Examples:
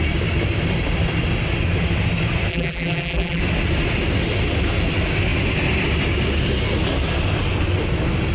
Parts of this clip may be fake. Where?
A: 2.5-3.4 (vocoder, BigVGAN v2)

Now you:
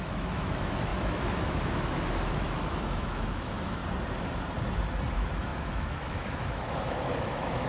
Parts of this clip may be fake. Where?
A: 0.0-3.8 (autoencoder, DAC-VAE); 5.1-7.7

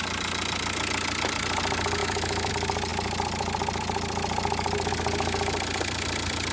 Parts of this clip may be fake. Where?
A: 2.0-2.5 (autoencoder, DAC-VAE)

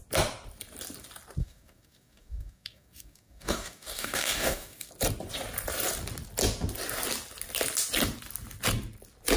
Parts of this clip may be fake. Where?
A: 1.4-4.9 (codec, DAC)

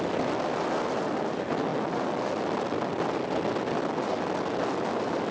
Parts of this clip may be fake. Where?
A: none

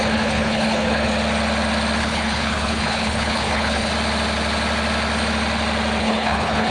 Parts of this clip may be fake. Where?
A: 0.0-1.1 (codec, HILCodec); 2.0-3.9; 6.0-6.7